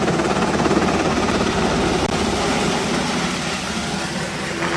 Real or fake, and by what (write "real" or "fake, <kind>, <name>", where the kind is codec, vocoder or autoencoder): fake, vocoder, BigVGAN v2